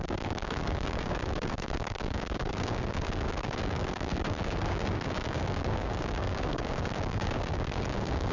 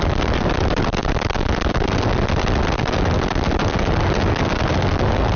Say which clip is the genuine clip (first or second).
second